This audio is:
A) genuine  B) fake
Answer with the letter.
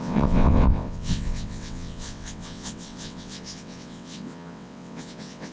B